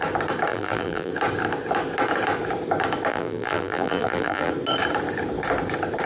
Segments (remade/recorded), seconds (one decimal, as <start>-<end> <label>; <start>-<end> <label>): 0.0-0.5 recorded; 0.5-1.1 remade; 1.1-3.1 recorded; 3.1-4.5 remade; 4.5-6.1 recorded